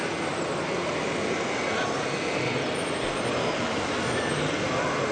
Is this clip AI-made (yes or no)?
no